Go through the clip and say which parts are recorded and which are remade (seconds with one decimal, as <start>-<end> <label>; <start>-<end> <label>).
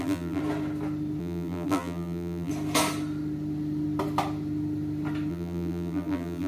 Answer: 0.0-0.4 remade; 0.4-1.2 recorded; 1.2-2.5 remade; 2.5-5.3 recorded; 5.3-6.5 remade